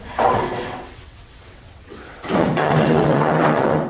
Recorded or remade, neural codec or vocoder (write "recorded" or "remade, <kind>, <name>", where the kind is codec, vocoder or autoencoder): remade, vocoder, WaveNeXt